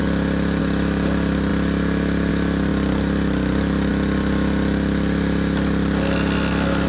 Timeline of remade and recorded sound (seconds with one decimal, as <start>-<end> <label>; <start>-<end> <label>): 0.0-6.9 recorded